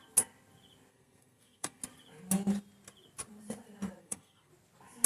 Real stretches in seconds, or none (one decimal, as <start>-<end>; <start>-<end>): 0.0-0.9; 1.8-4.0; 4.5-5.1